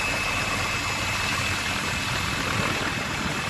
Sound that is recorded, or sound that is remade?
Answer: recorded